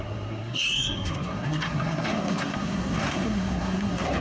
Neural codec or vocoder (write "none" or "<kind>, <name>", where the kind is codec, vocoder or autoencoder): codec, SNAC